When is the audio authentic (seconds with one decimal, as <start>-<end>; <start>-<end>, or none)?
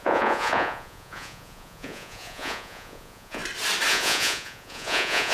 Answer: 3.4-3.9